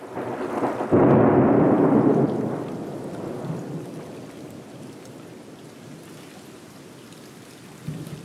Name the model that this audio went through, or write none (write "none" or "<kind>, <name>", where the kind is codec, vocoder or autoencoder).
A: none